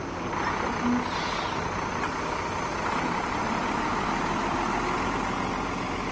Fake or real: real